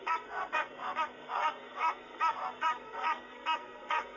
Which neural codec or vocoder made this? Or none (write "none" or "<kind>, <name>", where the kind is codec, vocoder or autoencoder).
codec, SNAC